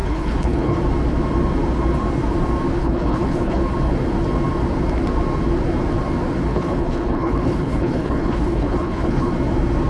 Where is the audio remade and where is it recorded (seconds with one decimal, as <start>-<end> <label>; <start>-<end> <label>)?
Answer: 0.0-0.8 remade; 0.8-2.8 recorded; 2.8-3.6 remade; 3.6-6.5 recorded; 6.5-9.3 remade; 9.3-9.9 recorded